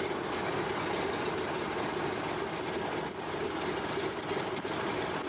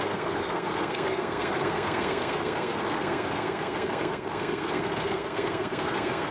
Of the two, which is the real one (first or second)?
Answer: first